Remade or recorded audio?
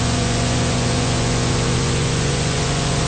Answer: remade